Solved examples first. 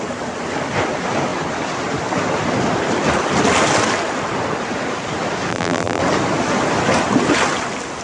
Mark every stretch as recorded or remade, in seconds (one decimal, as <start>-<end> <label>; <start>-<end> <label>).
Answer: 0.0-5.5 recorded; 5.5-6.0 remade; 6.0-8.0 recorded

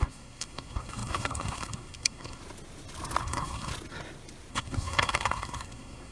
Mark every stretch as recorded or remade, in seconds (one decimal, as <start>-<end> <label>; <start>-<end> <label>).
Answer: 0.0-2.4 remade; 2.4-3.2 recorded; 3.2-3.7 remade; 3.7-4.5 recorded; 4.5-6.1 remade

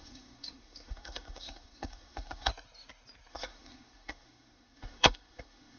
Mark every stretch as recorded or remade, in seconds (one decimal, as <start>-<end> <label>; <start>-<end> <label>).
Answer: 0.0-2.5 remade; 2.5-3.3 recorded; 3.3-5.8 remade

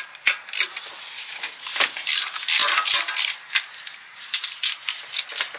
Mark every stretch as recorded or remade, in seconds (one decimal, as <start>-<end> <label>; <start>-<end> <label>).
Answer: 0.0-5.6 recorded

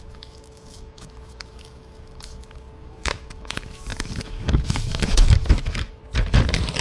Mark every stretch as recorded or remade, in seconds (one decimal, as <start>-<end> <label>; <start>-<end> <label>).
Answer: 0.0-6.0 remade; 6.0-6.8 recorded